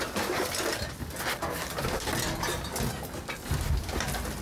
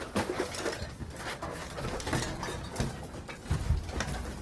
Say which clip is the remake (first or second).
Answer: second